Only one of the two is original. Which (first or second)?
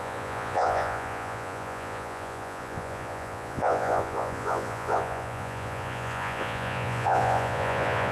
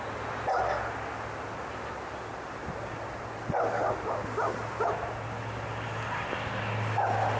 second